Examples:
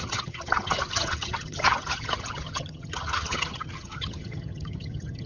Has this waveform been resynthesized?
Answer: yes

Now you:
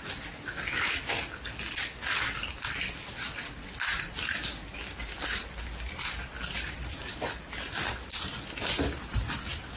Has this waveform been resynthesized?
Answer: no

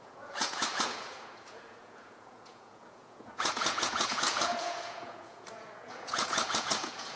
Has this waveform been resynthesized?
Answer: yes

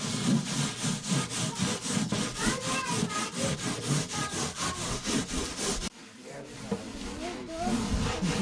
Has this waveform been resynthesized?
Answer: no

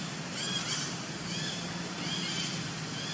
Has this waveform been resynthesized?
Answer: no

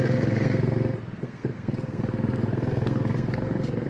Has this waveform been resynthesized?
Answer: yes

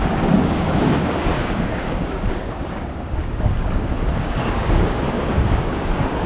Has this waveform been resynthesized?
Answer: yes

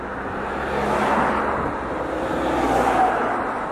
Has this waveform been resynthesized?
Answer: no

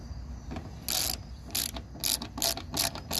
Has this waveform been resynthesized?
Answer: no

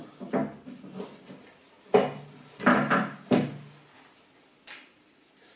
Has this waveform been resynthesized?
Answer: no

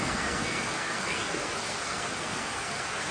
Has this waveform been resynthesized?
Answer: yes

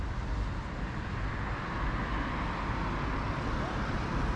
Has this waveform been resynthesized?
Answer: no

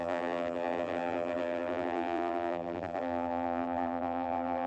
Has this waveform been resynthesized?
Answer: yes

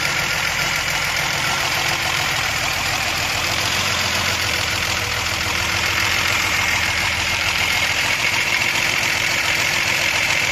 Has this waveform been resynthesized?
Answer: yes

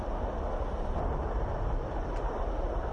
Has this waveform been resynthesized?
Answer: no